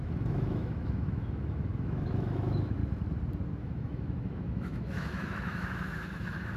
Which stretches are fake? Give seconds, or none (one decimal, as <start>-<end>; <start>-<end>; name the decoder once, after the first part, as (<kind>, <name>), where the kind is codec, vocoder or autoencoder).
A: 0.0-2.8 (autoencoder, DAC-VAE); 3.6-6.6